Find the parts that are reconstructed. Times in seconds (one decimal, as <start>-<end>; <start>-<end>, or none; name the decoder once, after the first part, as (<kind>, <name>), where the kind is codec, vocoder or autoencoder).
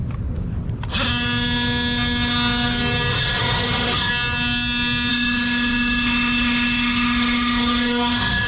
3.1-4.1 (autoencoder, DAC-VAE); 5.1-8.5